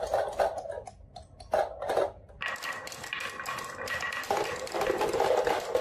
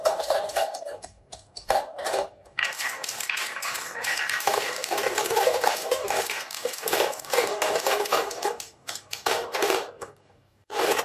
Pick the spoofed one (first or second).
second